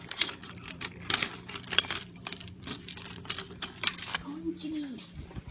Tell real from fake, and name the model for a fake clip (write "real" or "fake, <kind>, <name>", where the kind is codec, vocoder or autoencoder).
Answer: fake, vocoder, BigVGAN v2